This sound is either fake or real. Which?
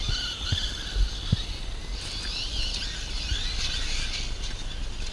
real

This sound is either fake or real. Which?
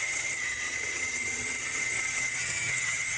fake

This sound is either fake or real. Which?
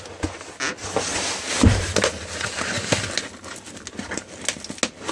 real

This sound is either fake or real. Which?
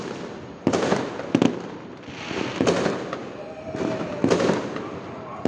real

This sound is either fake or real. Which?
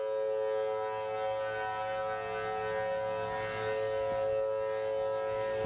real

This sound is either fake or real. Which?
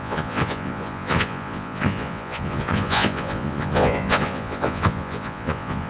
fake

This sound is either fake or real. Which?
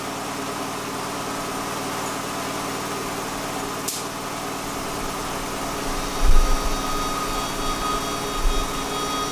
real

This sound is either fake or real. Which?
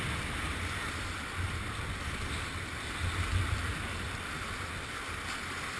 real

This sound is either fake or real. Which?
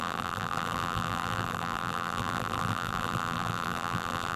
fake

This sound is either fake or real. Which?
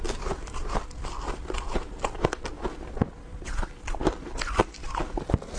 real